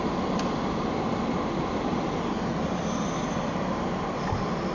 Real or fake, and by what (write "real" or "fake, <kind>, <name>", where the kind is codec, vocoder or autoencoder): real